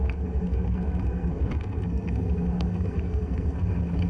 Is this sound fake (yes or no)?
yes